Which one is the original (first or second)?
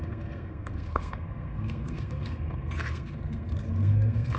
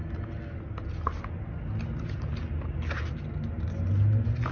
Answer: second